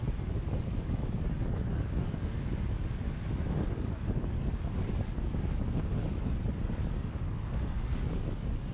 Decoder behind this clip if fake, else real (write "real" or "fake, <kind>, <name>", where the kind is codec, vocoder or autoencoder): fake, codec, DAC